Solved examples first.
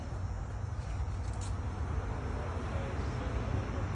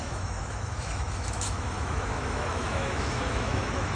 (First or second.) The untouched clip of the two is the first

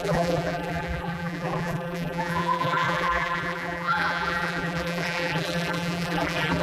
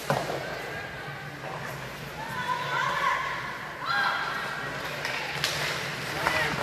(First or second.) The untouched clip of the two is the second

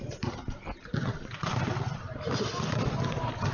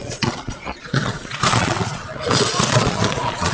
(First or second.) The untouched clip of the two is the first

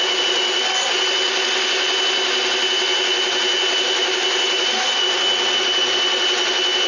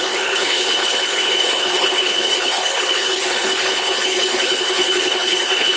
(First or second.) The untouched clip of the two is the first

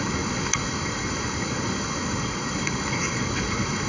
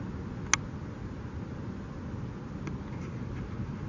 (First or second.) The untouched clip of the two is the second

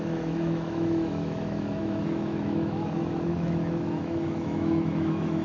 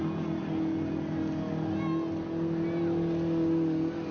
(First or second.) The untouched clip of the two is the second